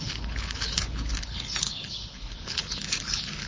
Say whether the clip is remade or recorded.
remade